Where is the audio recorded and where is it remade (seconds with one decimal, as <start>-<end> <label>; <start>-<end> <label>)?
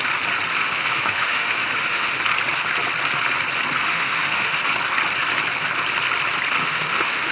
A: 0.0-0.6 recorded; 0.6-2.2 remade; 2.2-3.8 recorded; 3.8-4.6 remade; 4.6-6.6 recorded; 6.6-7.3 remade